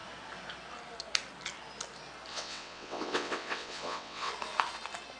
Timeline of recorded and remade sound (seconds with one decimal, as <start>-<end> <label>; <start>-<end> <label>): 0.0-2.3 recorded; 2.3-4.3 remade; 4.3-5.2 recorded